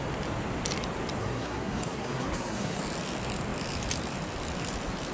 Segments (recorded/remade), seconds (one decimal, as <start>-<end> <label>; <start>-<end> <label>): 0.0-1.2 recorded; 1.2-2.8 remade; 2.8-5.1 recorded